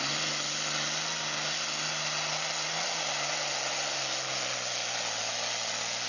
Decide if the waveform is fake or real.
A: real